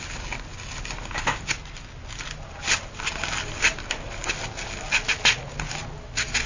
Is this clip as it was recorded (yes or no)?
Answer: yes